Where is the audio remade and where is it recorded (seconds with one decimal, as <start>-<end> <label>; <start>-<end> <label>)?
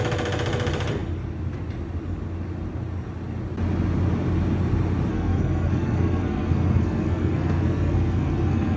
0.0-5.1 recorded; 5.1-8.8 remade